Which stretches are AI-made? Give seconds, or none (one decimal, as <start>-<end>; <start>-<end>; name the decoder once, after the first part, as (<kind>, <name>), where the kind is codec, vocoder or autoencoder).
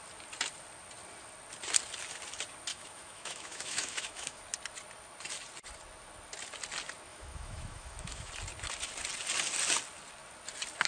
2.7-4.4 (autoencoder, DAC-VAE); 7.1-8.3